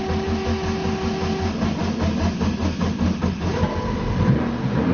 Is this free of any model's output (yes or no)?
yes